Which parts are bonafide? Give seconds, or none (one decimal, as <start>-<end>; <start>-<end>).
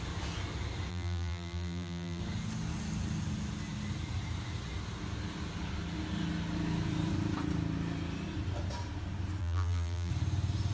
0.0-0.9; 2.2-9.4; 10.1-10.7